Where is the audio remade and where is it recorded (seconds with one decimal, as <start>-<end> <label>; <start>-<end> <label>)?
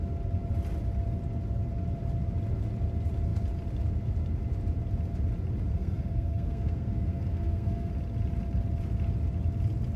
0.0-5.7 recorded; 5.7-7.9 remade; 7.9-10.0 recorded